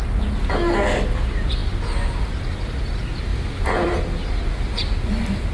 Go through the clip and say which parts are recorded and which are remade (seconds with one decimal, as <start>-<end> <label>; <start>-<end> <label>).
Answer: 0.0-3.3 recorded; 3.3-3.9 remade; 3.9-5.5 recorded